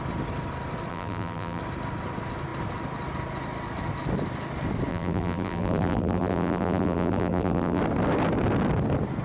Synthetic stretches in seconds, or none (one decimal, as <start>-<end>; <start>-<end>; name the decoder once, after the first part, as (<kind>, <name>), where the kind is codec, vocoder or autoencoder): 0.9-1.6 (vocoder, BigVGAN v2); 4.9-7.8

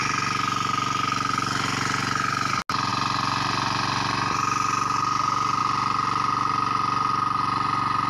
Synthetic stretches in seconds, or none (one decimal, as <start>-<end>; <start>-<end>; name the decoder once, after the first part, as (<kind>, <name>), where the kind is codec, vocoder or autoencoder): none

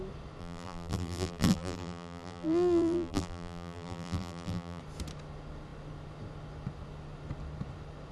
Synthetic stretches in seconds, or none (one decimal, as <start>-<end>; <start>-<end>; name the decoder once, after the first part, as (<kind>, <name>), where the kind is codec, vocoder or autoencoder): 0.4-4.8 (vocoder, BigVGAN v2)